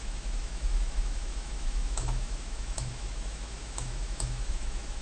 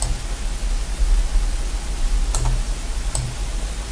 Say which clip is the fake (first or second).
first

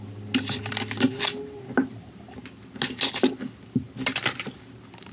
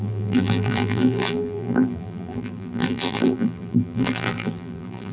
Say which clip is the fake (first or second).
second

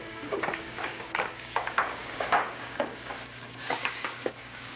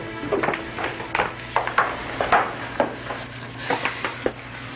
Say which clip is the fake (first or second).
first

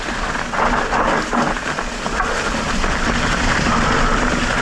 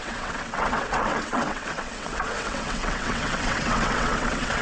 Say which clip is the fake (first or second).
second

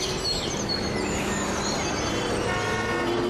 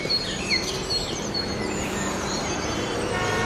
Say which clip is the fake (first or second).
second